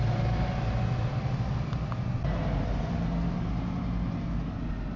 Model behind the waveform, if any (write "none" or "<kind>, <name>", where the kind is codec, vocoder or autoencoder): none